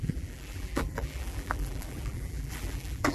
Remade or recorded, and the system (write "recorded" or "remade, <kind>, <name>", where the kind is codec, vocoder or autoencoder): remade, vocoder, BigVGAN v2